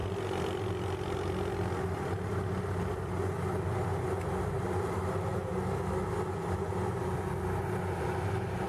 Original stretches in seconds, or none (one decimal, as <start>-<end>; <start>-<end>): 0.0-8.7